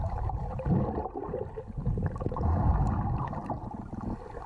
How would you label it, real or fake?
real